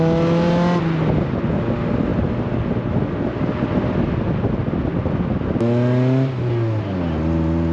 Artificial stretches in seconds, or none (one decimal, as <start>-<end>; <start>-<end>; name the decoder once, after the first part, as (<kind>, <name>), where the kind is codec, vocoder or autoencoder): none

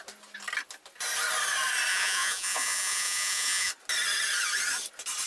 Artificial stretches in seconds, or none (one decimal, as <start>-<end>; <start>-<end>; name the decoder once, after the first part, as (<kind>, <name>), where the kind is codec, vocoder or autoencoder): 1.9-3.7 (vocoder, Vocos)

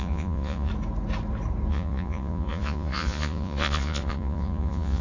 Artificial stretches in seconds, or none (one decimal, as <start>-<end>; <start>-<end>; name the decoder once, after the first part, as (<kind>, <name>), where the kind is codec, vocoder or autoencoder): 0.0-0.7 (vocoder, Vocos); 1.7-5.0